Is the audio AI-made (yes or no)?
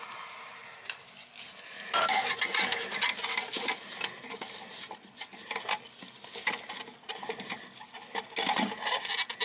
no